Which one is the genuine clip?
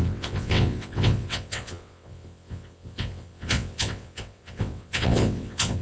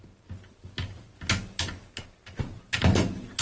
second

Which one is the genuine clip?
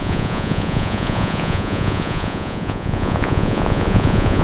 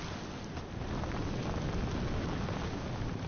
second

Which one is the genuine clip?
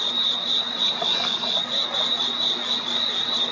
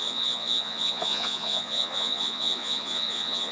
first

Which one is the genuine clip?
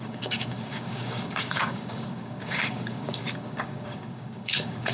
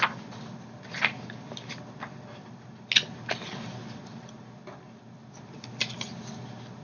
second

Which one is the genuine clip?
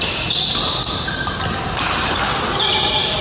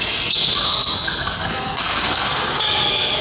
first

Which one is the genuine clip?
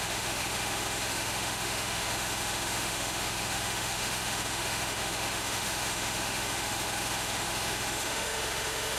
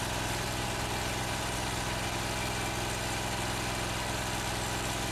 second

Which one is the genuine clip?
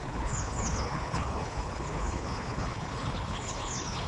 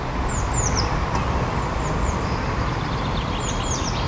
second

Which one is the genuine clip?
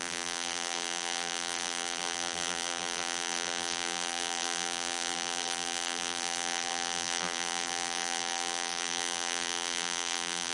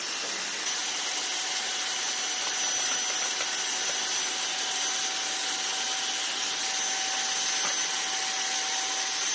second